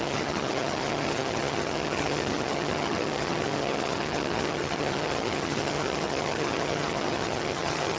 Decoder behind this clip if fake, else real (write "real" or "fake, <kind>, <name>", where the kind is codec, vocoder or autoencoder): fake, vocoder, HiFi-GAN